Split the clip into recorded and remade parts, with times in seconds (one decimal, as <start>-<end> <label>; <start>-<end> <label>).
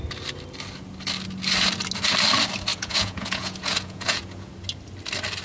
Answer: 0.0-2.7 recorded; 2.7-4.5 remade; 4.5-5.4 recorded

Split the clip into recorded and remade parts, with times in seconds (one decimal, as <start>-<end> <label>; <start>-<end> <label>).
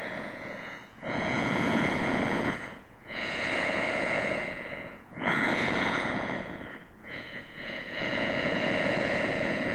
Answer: 0.0-9.7 remade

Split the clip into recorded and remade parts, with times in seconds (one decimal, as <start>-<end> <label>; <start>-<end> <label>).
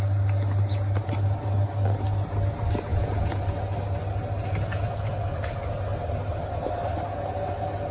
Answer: 0.0-2.9 recorded; 2.9-3.4 remade; 3.4-7.9 recorded